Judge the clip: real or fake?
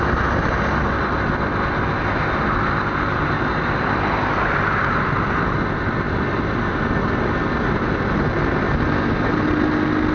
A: real